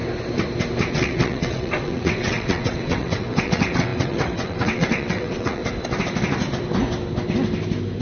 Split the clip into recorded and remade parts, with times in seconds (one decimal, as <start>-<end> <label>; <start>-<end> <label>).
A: 0.0-0.9 recorded; 0.9-5.6 remade; 5.6-8.0 recorded